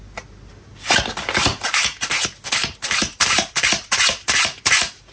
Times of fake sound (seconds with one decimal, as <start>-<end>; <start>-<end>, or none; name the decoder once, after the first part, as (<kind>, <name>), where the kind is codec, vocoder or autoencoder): none